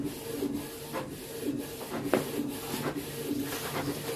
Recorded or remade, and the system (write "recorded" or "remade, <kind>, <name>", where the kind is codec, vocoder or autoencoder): recorded